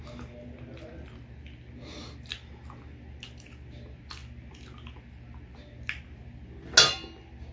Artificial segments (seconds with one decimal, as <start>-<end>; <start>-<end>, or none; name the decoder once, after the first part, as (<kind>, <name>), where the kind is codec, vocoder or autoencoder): none